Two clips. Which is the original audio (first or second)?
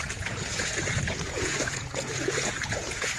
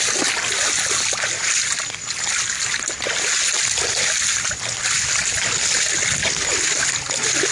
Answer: second